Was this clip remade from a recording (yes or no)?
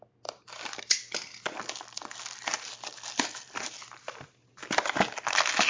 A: no